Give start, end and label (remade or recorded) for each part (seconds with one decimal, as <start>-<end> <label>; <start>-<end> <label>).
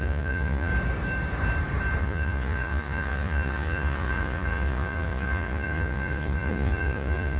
0.0-0.7 remade; 0.7-2.0 recorded; 2.0-7.4 remade